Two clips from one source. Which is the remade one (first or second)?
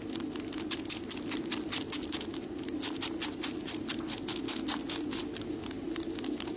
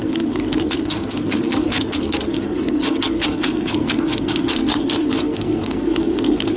second